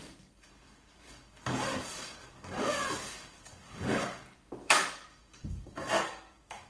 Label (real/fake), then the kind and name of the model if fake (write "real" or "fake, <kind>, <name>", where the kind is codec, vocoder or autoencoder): fake, codec, DAC